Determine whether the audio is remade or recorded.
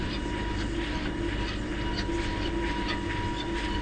recorded